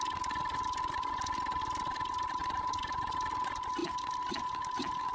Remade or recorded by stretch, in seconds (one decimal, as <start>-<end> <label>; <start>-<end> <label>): 0.0-2.4 recorded; 2.4-3.0 remade; 3.0-3.8 recorded; 3.8-5.1 remade

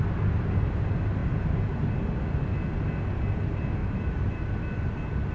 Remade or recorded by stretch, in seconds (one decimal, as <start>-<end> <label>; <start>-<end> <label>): 0.0-1.2 recorded; 1.2-1.9 remade; 1.9-3.8 recorded; 3.8-4.5 remade; 4.5-5.3 recorded

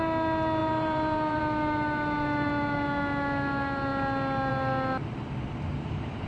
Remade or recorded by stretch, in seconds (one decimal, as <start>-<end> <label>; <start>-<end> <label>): 0.0-0.6 recorded; 0.6-1.4 remade; 1.4-6.3 recorded

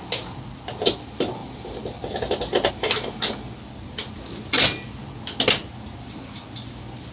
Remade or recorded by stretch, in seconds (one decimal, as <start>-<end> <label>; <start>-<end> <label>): 0.0-7.1 recorded

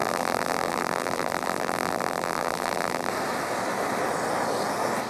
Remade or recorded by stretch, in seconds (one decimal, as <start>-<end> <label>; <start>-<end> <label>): 0.0-3.1 remade; 3.1-5.1 recorded

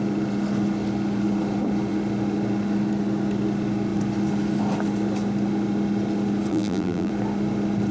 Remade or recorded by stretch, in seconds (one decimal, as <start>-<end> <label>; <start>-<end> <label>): 0.0-6.5 recorded; 6.5-7.1 remade; 7.1-7.9 recorded

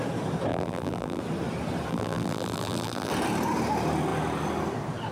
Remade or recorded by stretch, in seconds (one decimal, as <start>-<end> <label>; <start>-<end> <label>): 0.0-0.5 recorded; 0.5-1.2 remade; 1.2-1.9 recorded; 1.9-3.1 remade; 3.1-5.1 recorded